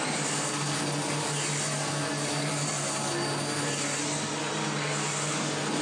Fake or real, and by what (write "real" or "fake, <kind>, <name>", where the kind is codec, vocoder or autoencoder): real